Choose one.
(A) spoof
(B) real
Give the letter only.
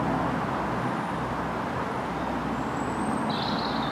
B